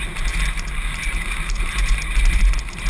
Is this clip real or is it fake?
real